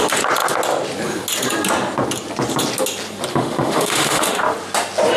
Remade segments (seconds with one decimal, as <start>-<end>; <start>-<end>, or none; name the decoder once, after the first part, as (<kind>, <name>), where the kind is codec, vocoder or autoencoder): 3.3-4.4 (autoencoder, DAC-VAE)

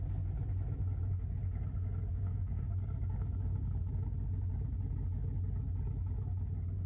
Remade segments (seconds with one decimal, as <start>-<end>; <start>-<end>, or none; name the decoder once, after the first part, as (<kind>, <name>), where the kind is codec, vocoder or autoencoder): 2.1-4.1 (codec, DAC)

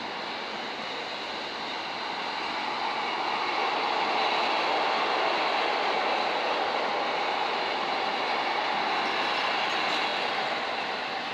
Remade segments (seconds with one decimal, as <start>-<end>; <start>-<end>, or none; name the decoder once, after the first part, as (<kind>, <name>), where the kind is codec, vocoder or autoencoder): none

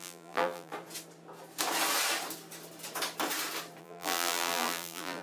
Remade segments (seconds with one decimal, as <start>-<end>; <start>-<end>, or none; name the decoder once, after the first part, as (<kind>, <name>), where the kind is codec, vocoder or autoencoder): 0.0-0.7 (vocoder, BigVGAN v2); 3.8-5.2

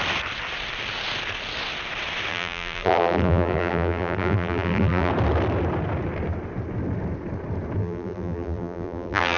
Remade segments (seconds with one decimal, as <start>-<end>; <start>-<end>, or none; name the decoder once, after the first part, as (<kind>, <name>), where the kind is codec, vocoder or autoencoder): 2.3-5.1 (vocoder, BigVGAN v2); 7.8-9.4

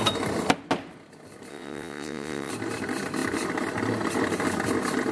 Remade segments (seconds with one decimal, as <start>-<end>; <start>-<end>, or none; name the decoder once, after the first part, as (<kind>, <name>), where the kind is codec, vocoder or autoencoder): 1.5-2.5 (vocoder, WaveNeXt)

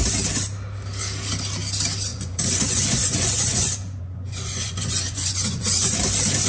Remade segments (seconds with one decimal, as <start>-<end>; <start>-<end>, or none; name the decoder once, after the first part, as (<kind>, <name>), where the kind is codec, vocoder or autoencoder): 2.1-6.0 (vocoder, Vocos)

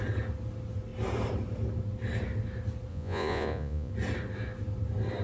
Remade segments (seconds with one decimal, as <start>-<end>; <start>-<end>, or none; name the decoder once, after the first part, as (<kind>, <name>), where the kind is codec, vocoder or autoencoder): 2.9-3.9 (vocoder, Vocos)